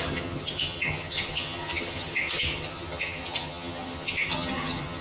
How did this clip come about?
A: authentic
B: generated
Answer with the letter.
B